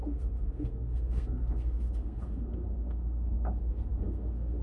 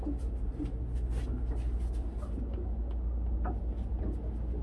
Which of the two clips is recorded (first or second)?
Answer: second